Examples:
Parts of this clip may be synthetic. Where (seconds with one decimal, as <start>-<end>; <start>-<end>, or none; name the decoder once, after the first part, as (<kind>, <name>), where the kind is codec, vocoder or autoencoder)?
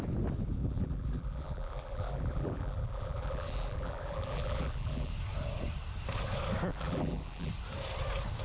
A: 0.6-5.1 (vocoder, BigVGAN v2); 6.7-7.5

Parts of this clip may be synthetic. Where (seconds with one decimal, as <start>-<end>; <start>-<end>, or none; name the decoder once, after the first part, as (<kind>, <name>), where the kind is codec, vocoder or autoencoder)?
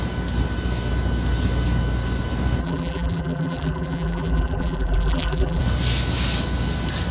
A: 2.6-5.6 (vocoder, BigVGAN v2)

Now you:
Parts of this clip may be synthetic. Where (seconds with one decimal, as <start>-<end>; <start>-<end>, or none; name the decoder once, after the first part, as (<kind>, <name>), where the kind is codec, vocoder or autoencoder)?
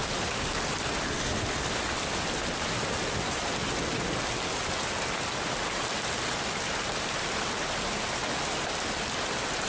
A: none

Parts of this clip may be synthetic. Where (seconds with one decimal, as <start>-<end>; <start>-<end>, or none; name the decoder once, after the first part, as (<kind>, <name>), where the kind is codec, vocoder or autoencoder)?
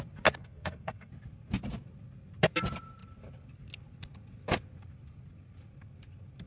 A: 0.4-1.1 (codec, SNAC)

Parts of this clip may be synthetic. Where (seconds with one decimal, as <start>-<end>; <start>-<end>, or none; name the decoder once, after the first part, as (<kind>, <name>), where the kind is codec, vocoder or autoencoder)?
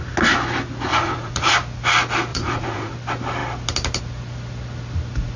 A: 0.9-1.5 (vocoder, Vocos); 2.3-2.9